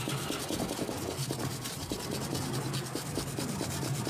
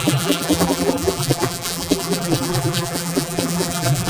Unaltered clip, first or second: first